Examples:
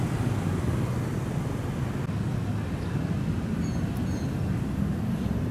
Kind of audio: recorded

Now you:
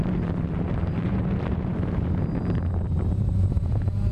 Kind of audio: remade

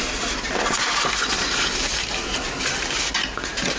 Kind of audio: recorded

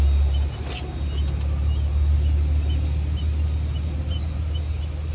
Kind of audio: recorded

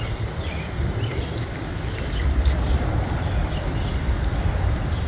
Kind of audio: remade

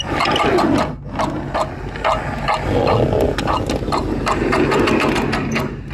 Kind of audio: recorded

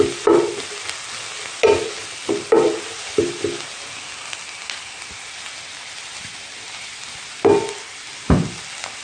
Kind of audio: recorded